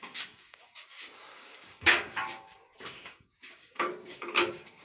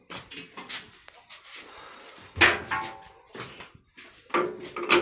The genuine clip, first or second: second